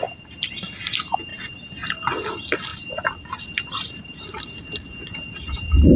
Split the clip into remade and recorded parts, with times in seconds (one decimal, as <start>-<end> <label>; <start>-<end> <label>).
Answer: 0.0-2.7 recorded; 2.7-3.2 remade; 3.2-6.0 recorded